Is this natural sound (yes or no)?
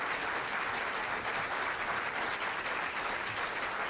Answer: yes